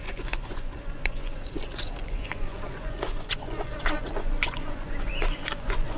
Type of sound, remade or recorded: remade